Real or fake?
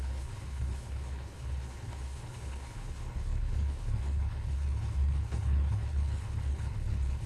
fake